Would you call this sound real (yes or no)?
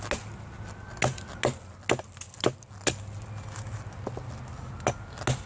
yes